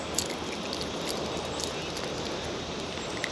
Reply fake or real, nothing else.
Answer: real